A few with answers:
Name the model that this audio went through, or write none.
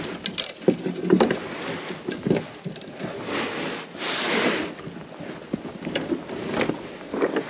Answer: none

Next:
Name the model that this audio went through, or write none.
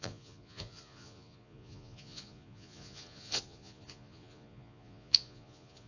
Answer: vocoder, Vocos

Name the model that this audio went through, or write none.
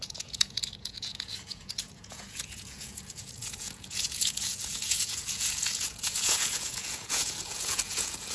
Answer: vocoder, Vocos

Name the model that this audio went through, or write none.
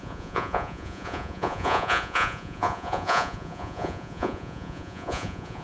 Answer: vocoder, Vocos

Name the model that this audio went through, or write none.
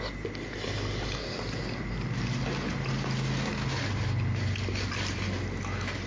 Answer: none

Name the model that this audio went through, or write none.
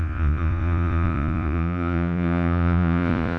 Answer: vocoder, Vocos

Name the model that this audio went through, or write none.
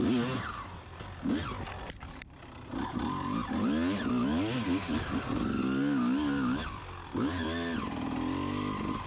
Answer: none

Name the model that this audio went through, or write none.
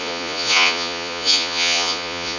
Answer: vocoder, Vocos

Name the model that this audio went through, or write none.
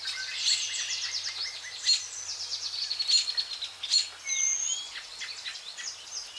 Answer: none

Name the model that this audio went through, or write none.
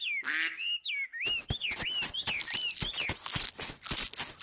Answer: none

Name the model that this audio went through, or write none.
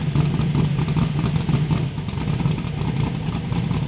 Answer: none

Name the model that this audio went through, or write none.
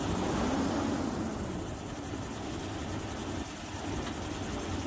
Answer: none